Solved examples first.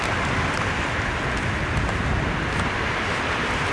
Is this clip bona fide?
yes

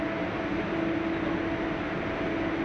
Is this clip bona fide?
yes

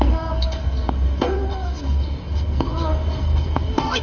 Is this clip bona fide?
no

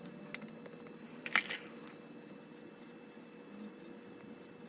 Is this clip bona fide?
yes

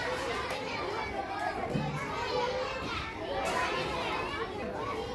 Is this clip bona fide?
yes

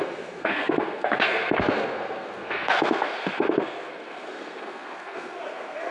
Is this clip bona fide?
no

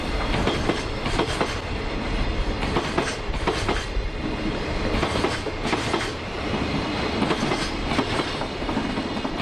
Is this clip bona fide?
yes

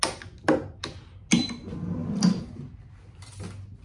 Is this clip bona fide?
yes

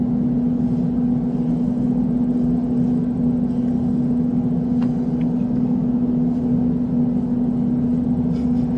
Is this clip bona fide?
yes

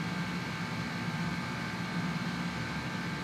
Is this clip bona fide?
yes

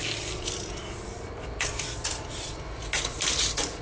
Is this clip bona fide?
yes